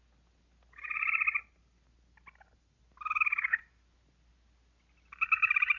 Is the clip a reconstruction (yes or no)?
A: no